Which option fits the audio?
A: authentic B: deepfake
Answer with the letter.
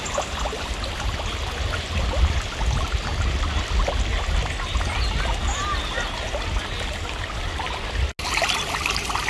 A